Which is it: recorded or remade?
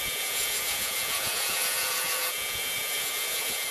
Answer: remade